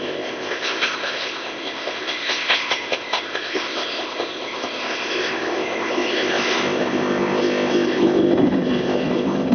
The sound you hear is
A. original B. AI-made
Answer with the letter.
B